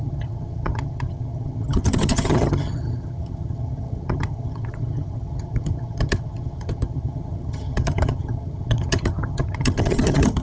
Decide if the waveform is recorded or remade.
remade